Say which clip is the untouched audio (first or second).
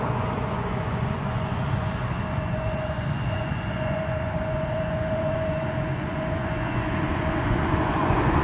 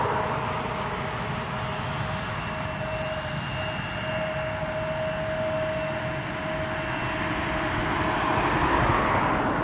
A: second